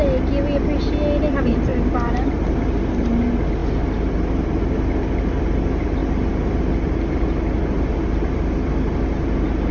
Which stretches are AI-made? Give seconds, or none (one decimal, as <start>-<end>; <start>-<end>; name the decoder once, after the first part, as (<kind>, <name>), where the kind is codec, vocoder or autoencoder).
none